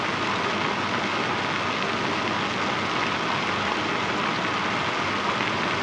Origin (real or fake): real